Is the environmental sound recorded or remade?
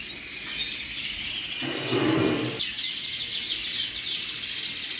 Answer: recorded